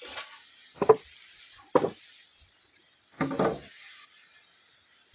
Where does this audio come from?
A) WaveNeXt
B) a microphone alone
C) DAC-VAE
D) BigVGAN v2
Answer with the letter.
D